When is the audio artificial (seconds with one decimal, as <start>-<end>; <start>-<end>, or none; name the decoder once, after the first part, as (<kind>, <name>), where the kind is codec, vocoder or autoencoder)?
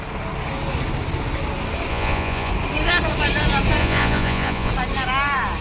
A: 1.9-2.5 (vocoder, Vocos); 3.8-4.7